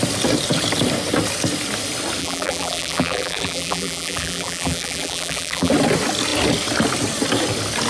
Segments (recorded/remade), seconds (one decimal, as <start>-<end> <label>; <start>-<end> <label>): 0.0-2.2 recorded; 2.2-5.7 remade; 5.7-7.9 recorded